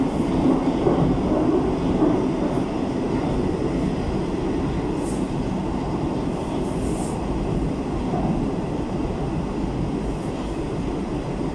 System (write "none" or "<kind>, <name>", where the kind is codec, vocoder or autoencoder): none